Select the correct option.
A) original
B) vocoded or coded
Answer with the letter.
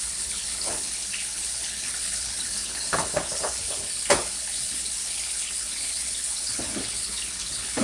B